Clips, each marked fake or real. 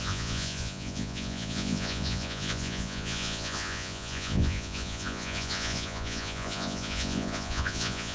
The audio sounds fake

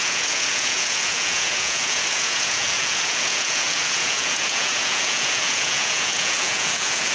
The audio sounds fake